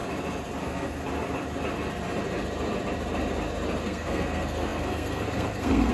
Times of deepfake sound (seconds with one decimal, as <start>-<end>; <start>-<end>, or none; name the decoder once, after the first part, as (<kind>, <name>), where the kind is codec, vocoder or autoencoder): 0.6-1.0 (codec, SNAC); 3.8-5.9